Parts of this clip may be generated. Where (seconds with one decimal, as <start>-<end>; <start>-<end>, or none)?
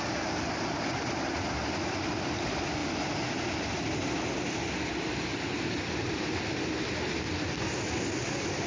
none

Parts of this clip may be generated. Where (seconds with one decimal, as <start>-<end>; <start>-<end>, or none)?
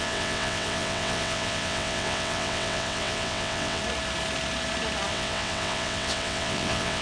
0.0-3.8; 5.1-7.0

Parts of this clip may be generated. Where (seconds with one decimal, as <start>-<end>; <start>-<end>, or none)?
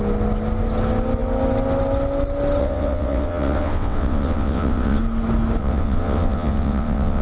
2.6-5.0; 5.6-7.2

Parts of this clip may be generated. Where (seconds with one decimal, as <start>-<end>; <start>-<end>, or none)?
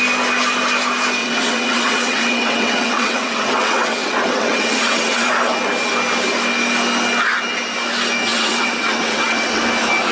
1.2-5.3; 8.3-9.6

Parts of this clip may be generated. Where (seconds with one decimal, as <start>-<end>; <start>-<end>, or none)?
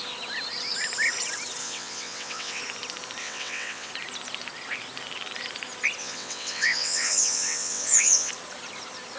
1.6-2.6; 3.2-3.9; 6.0-8.3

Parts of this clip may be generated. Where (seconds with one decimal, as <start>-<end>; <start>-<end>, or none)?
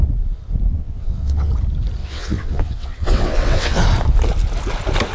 0.7-1.5; 2.0-3.8